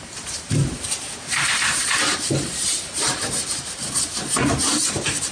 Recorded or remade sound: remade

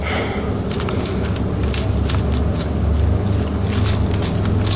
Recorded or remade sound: recorded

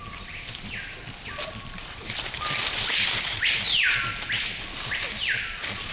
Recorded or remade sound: recorded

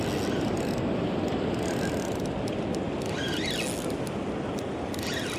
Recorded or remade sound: recorded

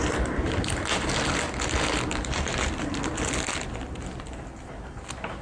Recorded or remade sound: recorded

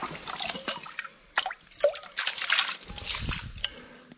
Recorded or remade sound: recorded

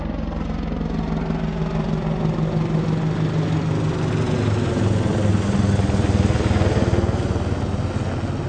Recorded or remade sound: recorded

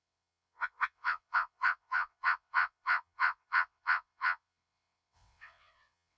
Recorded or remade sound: remade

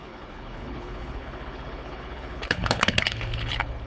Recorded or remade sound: remade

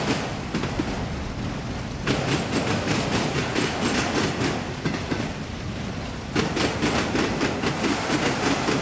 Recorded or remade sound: recorded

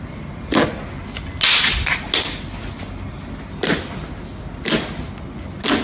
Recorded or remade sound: recorded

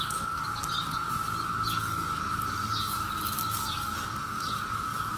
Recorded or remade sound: remade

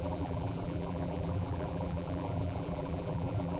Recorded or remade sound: remade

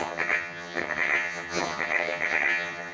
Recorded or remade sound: remade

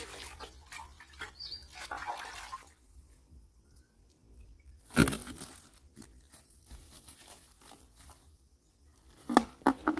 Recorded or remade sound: recorded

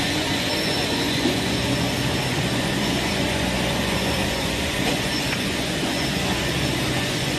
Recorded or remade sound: remade